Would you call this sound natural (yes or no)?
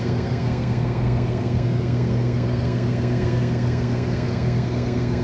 no